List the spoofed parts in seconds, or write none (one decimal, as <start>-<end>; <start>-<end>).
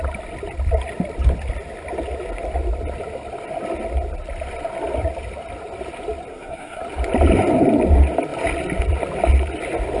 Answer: 6.3-6.8